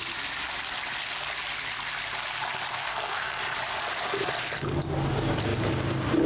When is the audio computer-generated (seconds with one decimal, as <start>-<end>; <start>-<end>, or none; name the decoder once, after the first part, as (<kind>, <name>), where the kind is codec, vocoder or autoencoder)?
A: 2.7-3.4 (codec, SNAC)